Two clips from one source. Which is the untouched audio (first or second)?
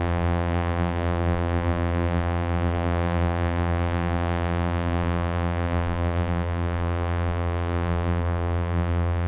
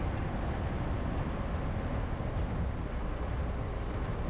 second